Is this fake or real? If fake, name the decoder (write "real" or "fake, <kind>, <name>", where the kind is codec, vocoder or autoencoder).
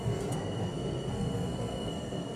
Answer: fake, codec, SNAC